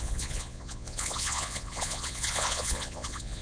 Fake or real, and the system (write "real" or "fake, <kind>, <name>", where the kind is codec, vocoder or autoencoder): fake, vocoder, Vocos